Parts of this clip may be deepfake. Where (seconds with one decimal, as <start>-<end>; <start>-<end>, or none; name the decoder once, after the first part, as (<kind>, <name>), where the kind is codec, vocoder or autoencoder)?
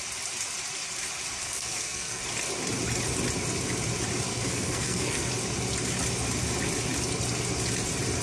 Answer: 1.4-2.2 (codec, SNAC); 4.3-5.3